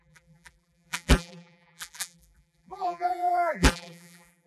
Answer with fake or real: fake